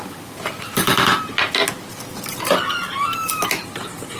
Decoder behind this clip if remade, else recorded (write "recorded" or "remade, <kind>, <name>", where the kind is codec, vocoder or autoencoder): recorded